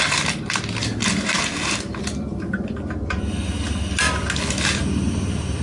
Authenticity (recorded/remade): recorded